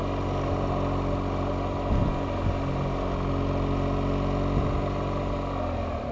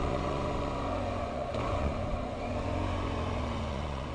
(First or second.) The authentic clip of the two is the first